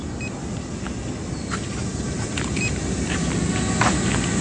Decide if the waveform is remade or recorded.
recorded